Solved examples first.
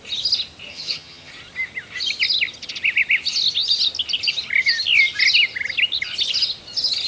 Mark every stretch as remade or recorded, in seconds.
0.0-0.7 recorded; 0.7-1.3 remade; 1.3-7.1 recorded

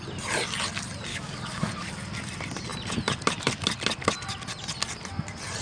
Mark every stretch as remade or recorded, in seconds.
0.0-1.1 recorded; 1.1-1.7 remade; 1.7-5.6 recorded